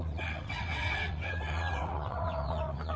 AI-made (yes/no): yes